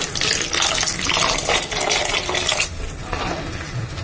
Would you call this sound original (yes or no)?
yes